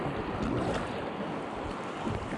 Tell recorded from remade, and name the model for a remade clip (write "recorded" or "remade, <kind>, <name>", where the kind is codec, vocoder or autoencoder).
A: recorded